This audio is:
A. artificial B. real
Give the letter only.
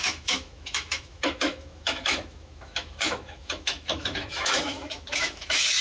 A